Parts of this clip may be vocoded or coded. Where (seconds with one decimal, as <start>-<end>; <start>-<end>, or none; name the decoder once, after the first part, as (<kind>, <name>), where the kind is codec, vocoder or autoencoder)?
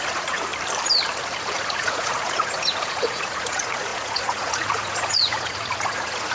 0.0-0.5 (vocoder, Vocos); 1.5-6.3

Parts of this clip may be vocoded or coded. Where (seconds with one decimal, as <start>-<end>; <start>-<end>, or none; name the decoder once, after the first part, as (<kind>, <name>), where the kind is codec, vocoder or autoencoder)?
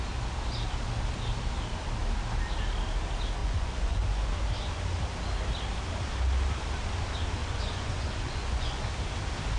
3.4-4.3 (vocoder, Vocos); 7.4-8.8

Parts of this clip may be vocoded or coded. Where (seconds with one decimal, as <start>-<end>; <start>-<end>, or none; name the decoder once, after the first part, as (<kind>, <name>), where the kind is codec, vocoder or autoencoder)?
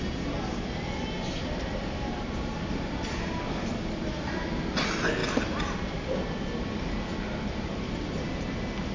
none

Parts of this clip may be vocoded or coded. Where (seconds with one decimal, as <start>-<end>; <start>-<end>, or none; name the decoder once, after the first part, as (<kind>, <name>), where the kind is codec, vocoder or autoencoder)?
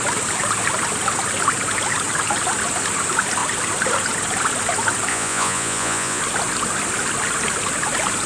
5.1-6.2 (vocoder, Vocos)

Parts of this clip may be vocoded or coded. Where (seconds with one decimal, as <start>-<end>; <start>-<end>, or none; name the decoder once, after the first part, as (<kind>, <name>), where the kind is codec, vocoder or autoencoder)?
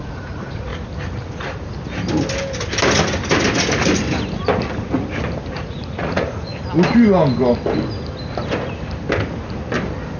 0.0-0.7 (vocoder, Vocos); 5.5-6.5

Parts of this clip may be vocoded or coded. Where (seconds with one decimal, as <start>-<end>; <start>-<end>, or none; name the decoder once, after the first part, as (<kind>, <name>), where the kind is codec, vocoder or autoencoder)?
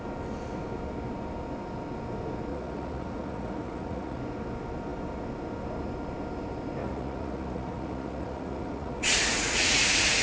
2.5-4.2 (vocoder, Vocos); 6.8-10.2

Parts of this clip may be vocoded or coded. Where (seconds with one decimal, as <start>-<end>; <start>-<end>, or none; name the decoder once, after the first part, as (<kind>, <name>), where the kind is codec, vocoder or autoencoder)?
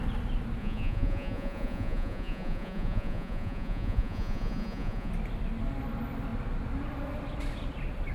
0.6-5.1 (vocoder, Vocos)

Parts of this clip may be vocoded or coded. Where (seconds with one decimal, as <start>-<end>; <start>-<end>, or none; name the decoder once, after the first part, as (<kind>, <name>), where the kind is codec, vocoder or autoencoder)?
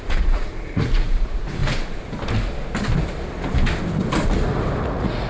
0.0-1.6 (vocoder, Vocos); 4.8-5.3